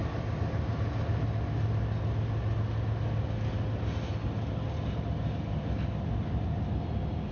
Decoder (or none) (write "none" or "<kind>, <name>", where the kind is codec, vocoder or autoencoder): none